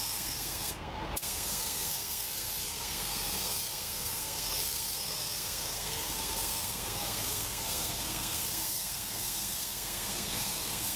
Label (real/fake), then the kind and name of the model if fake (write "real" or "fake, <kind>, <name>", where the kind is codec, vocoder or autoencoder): fake, codec, SNAC